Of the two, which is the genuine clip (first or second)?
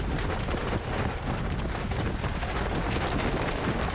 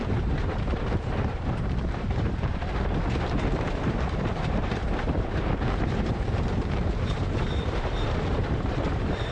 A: first